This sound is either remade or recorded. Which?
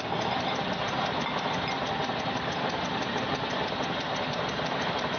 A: remade